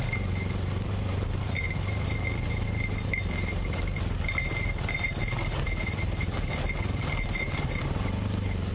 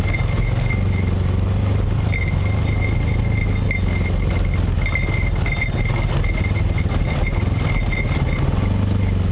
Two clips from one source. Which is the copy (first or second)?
first